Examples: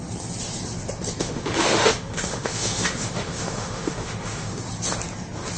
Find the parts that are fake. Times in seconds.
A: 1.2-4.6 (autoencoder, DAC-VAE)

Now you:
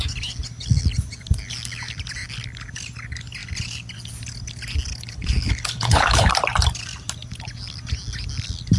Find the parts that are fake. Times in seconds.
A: 4.9-6.3 (codec, HILCodec)